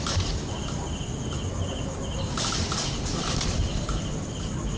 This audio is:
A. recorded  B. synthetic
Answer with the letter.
A